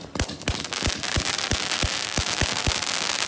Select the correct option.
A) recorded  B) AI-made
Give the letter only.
A